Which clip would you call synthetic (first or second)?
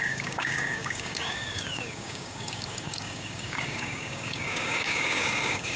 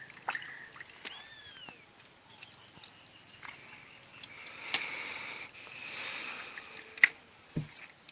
first